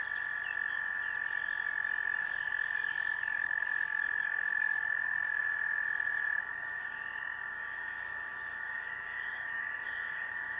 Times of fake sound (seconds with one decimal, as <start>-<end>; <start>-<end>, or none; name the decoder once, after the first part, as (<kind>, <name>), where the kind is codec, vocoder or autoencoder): 2.2-5.4 (codec, DAC); 6.5-10.6